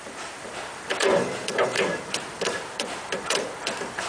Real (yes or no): no